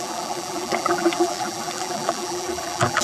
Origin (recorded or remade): remade